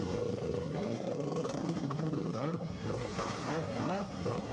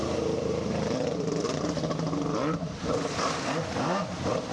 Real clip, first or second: second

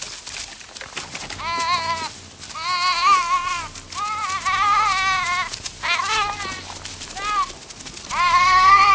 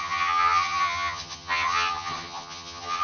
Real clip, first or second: first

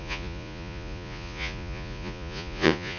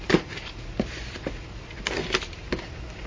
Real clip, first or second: second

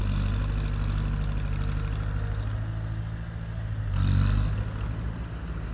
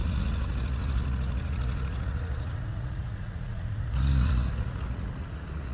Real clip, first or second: first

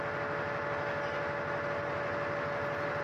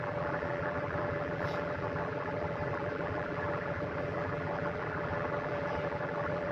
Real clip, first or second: first